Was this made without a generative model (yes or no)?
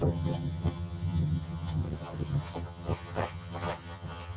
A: no